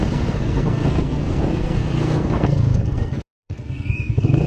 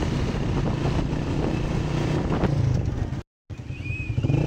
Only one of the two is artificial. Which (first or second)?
first